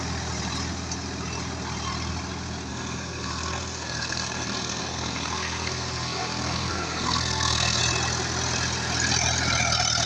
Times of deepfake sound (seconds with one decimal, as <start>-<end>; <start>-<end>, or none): 2.7-7.8